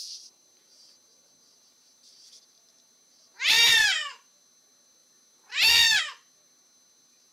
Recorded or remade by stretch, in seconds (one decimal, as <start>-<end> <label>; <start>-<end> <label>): 0.0-7.3 remade